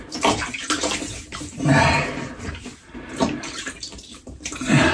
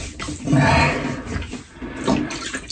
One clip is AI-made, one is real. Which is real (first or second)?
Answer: second